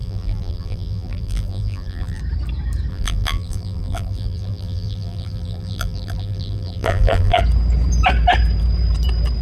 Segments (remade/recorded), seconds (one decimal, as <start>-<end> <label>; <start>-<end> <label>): 0.0-2.2 remade; 2.2-2.9 recorded; 2.9-7.4 remade; 7.4-9.4 recorded